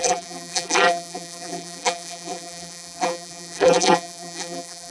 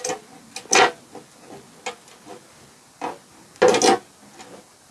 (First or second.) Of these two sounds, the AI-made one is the first